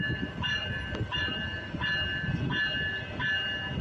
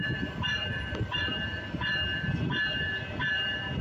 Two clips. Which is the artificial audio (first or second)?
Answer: second